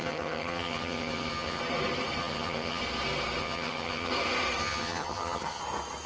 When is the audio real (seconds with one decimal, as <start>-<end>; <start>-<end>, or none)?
1.6-2.2; 2.8-3.4; 4.1-4.6; 5.6-6.1